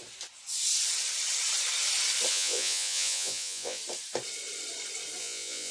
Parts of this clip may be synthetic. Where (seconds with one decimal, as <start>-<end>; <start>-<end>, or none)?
2.3-3.8; 5.2-5.7